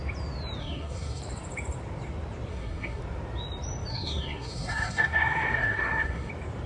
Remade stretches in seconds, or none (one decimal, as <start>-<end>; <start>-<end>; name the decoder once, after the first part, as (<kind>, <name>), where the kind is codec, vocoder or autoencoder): 0.6-1.2 (codec, SNAC); 2.5-3.0; 3.9-6.3